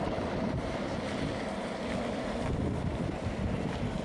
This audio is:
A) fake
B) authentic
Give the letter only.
A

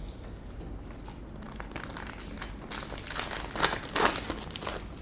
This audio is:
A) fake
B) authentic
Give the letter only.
B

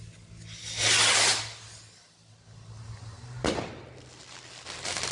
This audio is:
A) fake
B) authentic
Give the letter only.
B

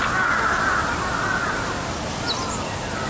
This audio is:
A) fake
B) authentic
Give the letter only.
B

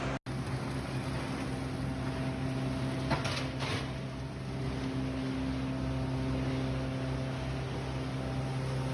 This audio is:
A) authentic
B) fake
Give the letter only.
A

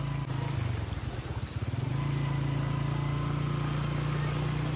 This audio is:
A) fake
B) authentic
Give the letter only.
B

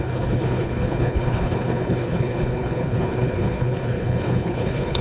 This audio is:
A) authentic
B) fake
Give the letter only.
B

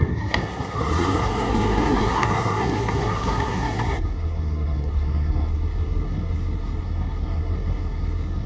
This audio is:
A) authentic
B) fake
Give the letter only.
B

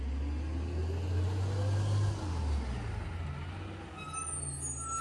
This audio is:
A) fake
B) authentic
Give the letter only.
B